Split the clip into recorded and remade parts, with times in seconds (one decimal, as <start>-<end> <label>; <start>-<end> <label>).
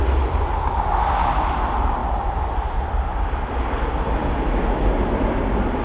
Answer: 0.0-5.8 recorded